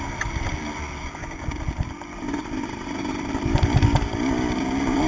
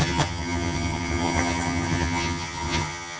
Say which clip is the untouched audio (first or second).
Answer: first